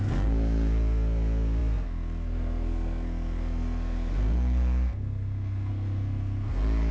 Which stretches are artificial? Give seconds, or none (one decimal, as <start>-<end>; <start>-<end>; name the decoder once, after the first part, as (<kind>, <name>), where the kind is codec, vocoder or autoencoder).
0.0-6.9 (codec, SNAC)